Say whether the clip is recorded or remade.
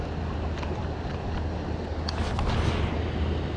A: recorded